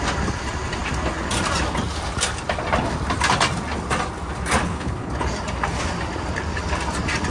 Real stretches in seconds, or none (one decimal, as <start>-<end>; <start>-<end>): 0.0-4.6; 5.1-7.3